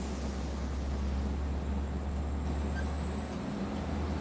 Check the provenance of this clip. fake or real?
real